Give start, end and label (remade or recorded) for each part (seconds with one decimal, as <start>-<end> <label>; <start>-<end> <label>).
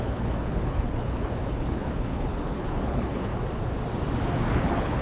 0.0-3.3 remade; 3.3-4.5 recorded; 4.5-5.0 remade